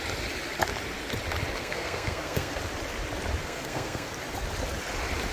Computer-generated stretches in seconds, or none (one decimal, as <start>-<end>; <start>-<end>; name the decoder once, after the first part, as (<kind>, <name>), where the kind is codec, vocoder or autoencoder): 1.6-2.6 (codec, SNAC); 3.4-4.1